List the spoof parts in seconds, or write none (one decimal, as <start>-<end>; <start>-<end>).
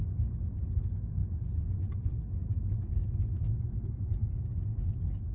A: none